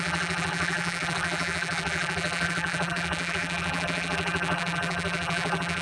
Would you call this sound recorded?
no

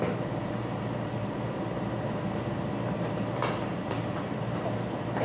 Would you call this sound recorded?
no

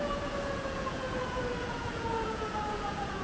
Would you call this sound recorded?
no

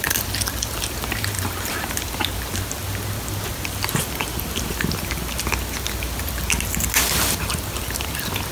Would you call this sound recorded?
yes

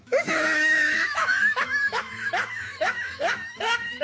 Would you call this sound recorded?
no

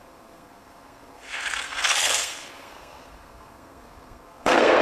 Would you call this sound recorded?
no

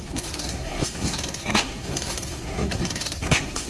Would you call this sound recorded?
no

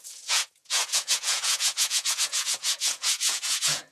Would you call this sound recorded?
no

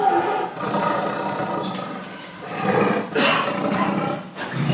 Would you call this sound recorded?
yes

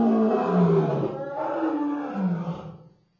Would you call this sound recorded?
yes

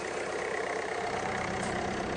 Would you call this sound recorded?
yes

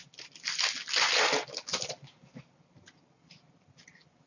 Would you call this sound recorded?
yes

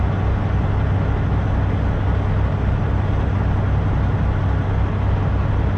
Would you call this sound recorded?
yes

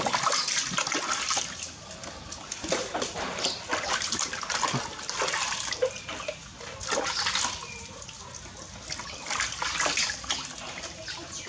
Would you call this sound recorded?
yes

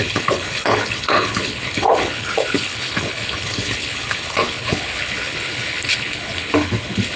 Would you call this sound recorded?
no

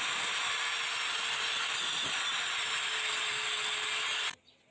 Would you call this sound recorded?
yes